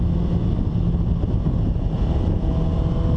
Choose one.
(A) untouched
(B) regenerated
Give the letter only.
A